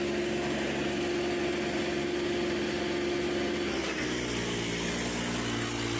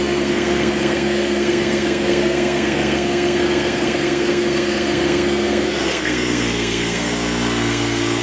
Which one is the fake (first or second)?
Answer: second